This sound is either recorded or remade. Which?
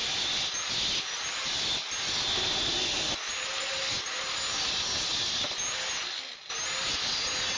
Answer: recorded